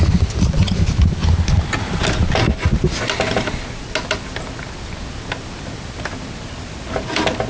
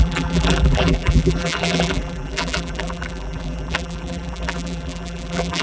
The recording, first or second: first